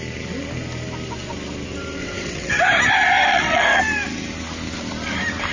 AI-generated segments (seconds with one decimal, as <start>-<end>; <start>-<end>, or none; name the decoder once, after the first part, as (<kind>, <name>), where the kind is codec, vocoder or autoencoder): 2.0-2.5 (vocoder, WaveNeXt); 3.3-3.8